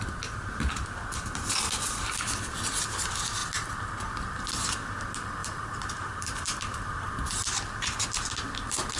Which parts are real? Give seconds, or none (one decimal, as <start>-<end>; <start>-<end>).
0.0-5.4; 7.1-9.0